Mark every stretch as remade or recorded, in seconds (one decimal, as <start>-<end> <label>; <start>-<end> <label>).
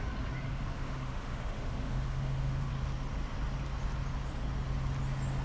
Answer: 0.0-0.5 recorded; 0.5-2.7 remade; 2.7-5.4 recorded